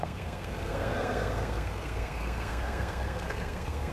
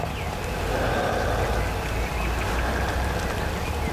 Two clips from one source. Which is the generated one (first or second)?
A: first